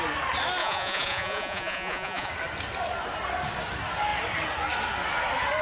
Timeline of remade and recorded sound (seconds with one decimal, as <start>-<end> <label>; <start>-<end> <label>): 0.0-0.6 recorded; 0.6-2.3 remade; 2.3-5.6 recorded